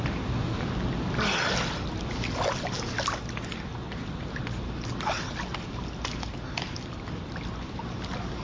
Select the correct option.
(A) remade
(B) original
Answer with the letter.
B